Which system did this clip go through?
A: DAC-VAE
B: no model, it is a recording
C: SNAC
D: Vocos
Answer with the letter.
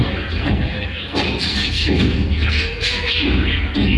C